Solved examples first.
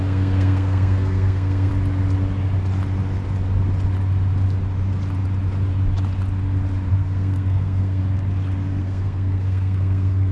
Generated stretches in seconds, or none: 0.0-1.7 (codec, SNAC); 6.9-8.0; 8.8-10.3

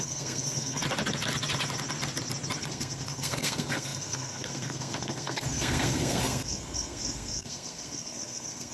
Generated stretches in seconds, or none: 0.0-0.8 (codec, SNAC); 2.6-8.7